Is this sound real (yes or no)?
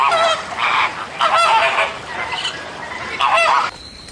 no